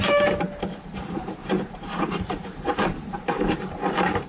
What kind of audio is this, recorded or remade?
remade